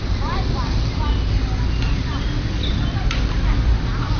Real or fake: real